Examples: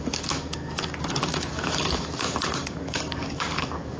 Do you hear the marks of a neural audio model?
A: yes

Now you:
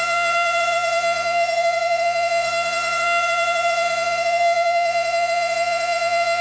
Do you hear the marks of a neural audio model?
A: yes